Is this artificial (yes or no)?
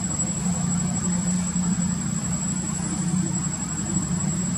yes